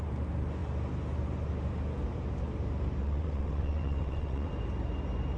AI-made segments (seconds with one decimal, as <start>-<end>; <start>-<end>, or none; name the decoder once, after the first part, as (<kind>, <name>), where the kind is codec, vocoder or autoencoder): 3.0-4.5 (vocoder, WaveNeXt)